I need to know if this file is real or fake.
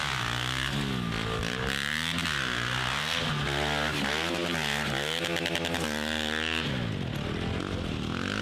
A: real